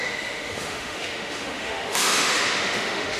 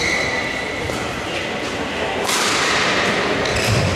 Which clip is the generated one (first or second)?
first